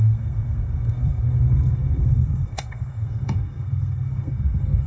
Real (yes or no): no